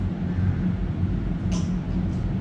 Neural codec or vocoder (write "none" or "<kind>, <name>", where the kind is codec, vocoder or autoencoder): none